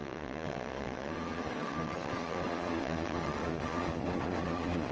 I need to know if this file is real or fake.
fake